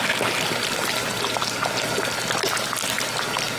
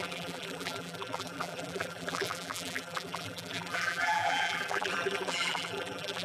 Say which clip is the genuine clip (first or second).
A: first